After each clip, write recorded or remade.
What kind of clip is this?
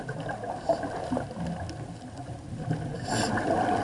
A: recorded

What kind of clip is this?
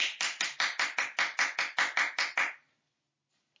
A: recorded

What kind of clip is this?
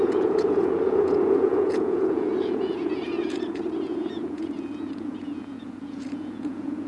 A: remade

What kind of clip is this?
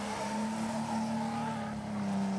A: recorded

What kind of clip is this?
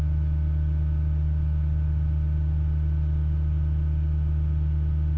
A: recorded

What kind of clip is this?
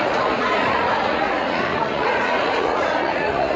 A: remade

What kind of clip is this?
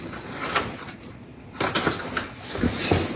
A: recorded